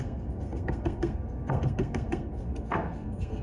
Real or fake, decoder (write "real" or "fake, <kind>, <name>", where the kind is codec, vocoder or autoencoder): fake, codec, SNAC